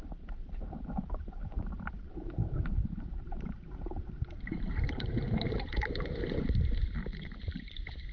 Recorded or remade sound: remade